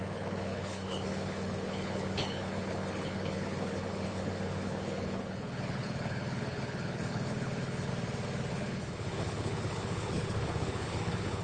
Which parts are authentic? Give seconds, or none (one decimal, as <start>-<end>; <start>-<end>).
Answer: 7.9-8.5